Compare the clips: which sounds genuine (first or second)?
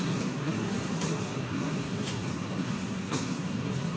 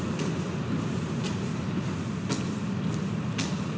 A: second